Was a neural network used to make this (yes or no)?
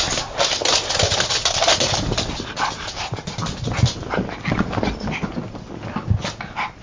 no